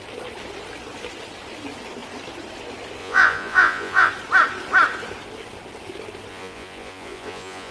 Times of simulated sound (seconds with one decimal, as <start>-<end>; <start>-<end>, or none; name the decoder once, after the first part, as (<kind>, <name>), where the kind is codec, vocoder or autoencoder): 3.0-4.1 (vocoder, Vocos); 6.3-7.7